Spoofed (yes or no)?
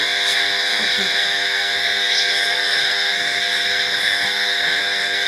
yes